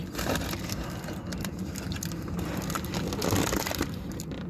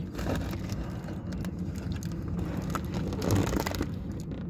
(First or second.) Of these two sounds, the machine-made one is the first